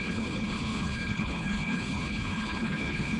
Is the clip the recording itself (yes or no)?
no